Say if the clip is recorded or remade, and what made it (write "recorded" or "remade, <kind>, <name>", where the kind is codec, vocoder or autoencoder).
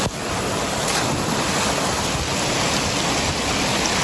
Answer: recorded